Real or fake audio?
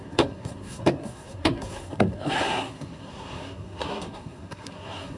fake